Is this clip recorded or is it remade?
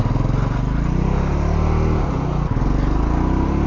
recorded